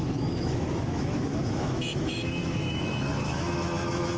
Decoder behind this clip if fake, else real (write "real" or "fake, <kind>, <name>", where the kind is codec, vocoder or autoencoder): fake, autoencoder, DAC-VAE